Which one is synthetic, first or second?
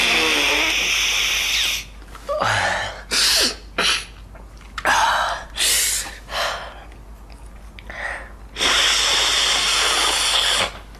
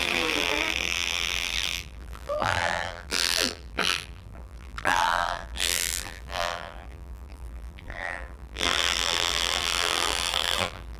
second